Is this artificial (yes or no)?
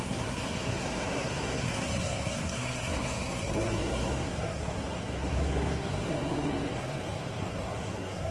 yes